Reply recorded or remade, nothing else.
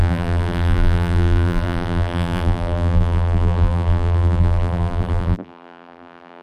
remade